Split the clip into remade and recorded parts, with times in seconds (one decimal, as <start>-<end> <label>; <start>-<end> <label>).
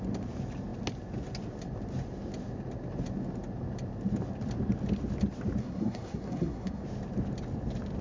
0.0-5.6 recorded; 5.6-6.8 remade; 6.8-8.0 recorded